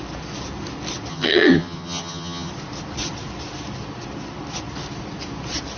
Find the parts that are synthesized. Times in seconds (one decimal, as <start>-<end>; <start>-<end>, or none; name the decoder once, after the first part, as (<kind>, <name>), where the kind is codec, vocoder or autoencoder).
1.1-2.5 (vocoder, HiFi-GAN)